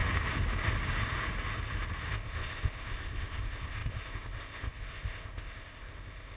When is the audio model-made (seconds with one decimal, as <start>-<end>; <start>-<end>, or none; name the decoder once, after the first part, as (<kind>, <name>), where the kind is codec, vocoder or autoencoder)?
2.1-6.4 (codec, ZipCodec)